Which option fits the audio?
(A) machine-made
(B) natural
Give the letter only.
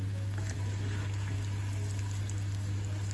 B